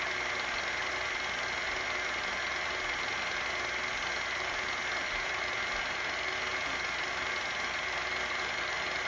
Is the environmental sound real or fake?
real